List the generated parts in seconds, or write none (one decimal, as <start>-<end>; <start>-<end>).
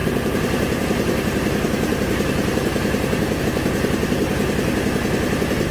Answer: 0.0-3.4